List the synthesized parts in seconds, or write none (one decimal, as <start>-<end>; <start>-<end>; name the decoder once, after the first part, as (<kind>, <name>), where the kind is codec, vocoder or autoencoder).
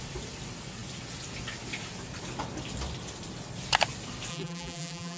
4.3-5.2 (vocoder, BigVGAN v2)